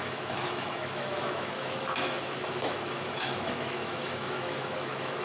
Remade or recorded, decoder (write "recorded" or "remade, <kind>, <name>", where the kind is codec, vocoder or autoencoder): remade, autoencoder, DAC-VAE